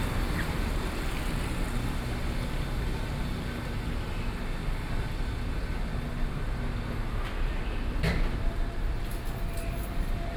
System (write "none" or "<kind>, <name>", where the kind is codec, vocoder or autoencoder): none